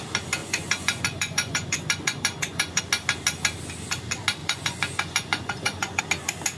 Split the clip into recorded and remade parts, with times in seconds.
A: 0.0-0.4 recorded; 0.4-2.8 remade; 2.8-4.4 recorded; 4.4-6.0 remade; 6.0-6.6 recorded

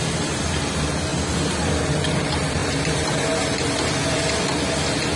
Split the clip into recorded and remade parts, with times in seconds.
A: 0.0-5.2 recorded

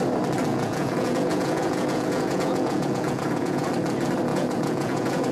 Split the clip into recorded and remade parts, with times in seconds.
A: 0.0-0.5 recorded; 0.5-3.7 remade; 3.7-4.3 recorded; 4.3-5.3 remade

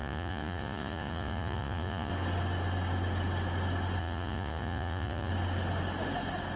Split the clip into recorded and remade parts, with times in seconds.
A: 0.0-2.1 remade; 2.1-4.0 recorded; 4.0-5.3 remade; 5.3-6.6 recorded

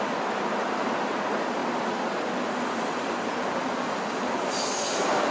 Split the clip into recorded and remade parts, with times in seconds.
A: 0.0-5.3 recorded

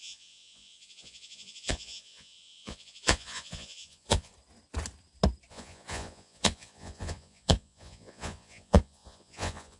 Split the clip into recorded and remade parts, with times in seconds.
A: 0.0-4.3 remade; 4.3-5.5 recorded; 5.5-9.8 remade